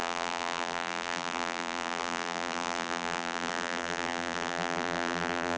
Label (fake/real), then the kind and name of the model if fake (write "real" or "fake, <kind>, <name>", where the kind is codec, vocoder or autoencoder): fake, vocoder, BigVGAN v2